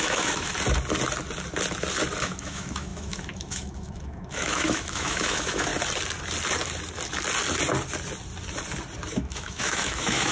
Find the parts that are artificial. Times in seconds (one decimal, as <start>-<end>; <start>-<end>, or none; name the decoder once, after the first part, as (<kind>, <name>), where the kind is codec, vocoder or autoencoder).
0.0-0.5 (autoencoder, DAC-VAE); 2.2-5.7; 9.1-10.3